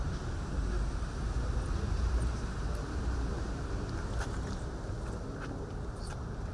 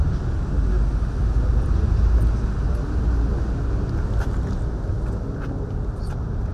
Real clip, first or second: second